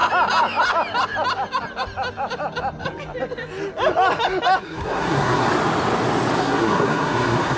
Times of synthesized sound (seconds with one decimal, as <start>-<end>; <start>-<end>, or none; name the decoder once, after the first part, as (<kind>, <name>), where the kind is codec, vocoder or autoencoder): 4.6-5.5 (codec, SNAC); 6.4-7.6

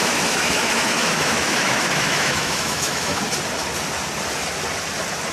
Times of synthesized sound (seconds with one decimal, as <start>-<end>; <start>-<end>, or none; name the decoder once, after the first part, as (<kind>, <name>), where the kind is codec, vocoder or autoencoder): 0.0-3.2 (autoencoder, DAC-VAE)

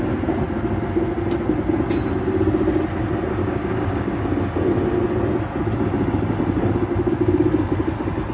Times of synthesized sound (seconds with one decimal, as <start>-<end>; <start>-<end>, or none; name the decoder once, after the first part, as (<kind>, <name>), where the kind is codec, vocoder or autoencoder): 3.4-4.2 (codec, DAC)

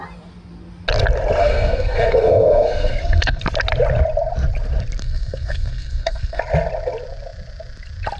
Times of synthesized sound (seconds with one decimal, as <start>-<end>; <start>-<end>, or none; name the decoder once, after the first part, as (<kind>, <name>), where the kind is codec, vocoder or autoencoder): 1.4-3.4 (codec, SNAC); 5.0-6.4

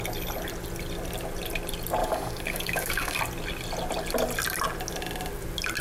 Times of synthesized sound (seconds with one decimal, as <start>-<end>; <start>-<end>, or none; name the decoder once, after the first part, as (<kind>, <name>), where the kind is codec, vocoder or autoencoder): 2.0-3.2 (codec, DAC)

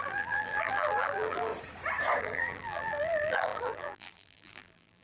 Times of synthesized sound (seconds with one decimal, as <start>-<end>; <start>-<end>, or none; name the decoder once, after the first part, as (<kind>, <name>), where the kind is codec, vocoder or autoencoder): 0.0-1.5 (vocoder, BigVGAN v2); 2.2-5.0

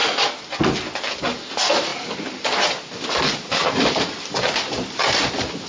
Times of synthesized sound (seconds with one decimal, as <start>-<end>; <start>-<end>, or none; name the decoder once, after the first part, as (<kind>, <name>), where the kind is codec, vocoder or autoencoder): 1.2-5.7 (vocoder, BigVGAN v2)